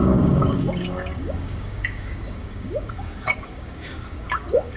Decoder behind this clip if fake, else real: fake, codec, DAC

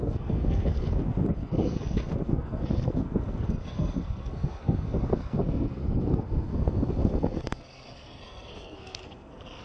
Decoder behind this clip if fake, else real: fake, codec, SNAC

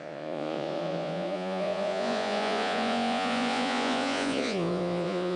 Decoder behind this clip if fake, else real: fake, vocoder, Vocos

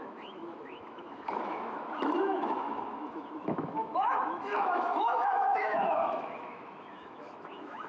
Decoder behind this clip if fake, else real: fake, autoencoder, DAC-VAE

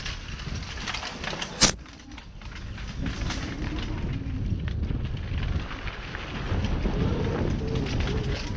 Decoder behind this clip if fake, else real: real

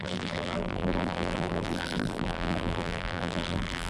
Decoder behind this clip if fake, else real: fake, vocoder, BigVGAN v2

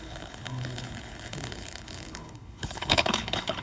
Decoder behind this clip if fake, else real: fake, codec, HILCodec